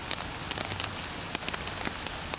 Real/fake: real